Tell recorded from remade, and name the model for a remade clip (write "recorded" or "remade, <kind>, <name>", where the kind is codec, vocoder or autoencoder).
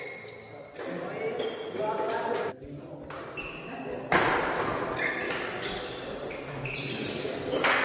recorded